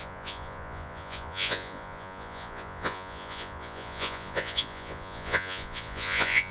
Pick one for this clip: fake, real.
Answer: fake